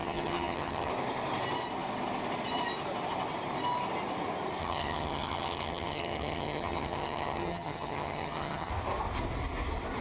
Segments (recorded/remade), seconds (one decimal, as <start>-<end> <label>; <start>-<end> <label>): 0.0-0.9 remade; 0.9-4.6 recorded; 4.6-8.7 remade; 8.7-10.0 recorded